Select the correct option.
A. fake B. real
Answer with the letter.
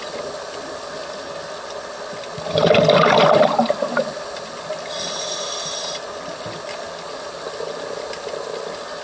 B